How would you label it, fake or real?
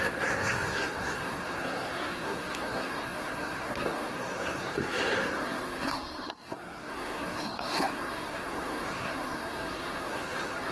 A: fake